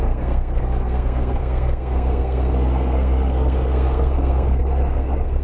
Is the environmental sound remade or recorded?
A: remade